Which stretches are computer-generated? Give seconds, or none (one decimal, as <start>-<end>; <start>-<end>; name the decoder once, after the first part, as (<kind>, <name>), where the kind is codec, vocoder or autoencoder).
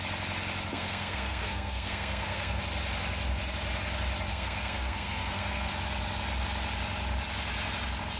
0.7-2.6 (codec, SNAC); 4.3-5.7